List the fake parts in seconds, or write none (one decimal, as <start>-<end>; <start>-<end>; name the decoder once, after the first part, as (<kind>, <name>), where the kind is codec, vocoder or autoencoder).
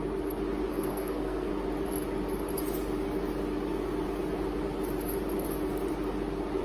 0.7-1.5 (codec, SNAC)